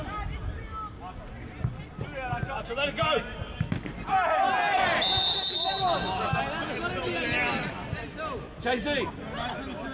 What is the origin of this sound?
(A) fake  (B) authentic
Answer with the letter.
B